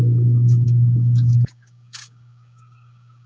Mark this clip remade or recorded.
remade